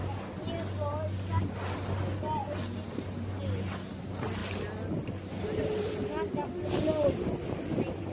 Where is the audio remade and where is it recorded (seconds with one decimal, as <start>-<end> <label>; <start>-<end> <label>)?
0.0-8.1 recorded